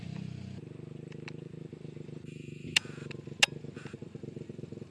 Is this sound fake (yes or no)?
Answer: no